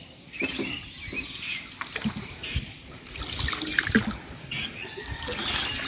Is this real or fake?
real